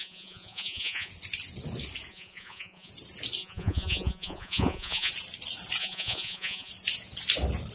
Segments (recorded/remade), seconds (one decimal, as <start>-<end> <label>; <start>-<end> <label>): 0.0-1.1 remade; 1.1-2.1 recorded; 2.1-2.9 remade; 2.9-3.4 recorded; 3.4-5.1 remade; 5.1-5.8 recorded; 5.8-6.7 remade; 6.7-7.7 recorded